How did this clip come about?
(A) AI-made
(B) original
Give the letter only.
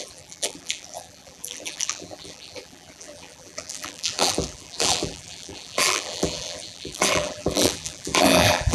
A